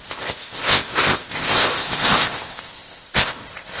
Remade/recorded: remade